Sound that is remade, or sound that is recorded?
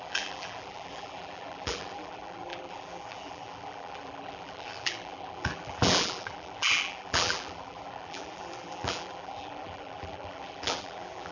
remade